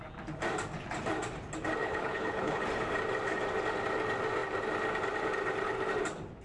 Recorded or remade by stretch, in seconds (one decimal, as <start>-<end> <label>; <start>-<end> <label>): 0.0-1.8 recorded; 1.8-2.6 remade; 2.6-6.4 recorded